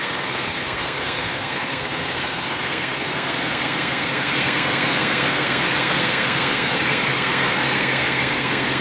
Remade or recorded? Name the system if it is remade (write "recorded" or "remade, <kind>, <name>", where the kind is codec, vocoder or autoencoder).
remade, codec, SNAC